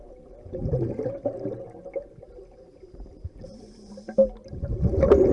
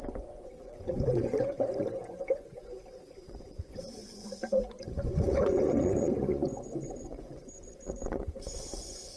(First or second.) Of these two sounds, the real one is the first